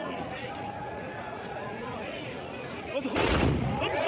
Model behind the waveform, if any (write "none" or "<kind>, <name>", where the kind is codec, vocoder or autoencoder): vocoder, Vocos